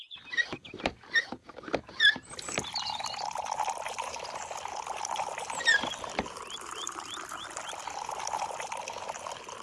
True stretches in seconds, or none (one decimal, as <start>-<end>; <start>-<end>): 0.0-9.6